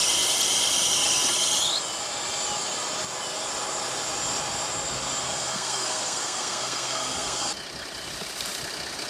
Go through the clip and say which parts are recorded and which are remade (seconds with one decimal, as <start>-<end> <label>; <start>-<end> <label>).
0.0-5.2 recorded; 5.2-7.5 remade; 7.5-9.1 recorded